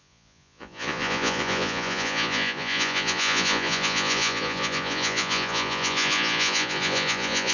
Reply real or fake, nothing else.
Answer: fake